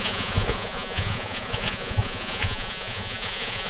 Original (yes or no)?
no